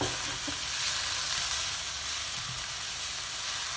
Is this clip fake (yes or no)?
no